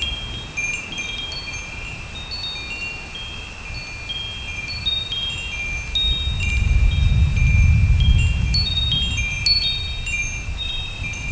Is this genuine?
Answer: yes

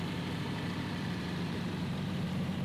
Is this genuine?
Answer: no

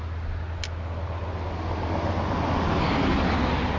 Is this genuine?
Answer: yes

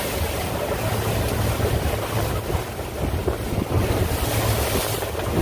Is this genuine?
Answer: yes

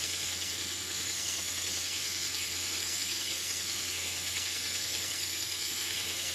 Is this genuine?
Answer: no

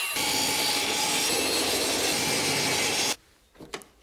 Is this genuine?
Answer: yes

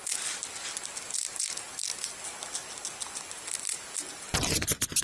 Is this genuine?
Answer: yes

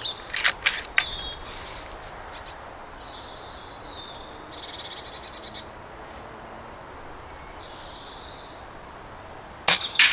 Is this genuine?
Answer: yes